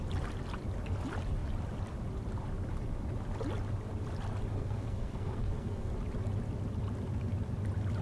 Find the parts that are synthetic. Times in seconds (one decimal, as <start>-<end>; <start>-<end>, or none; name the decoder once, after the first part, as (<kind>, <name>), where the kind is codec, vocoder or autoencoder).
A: 4.5-5.9 (codec, SNAC)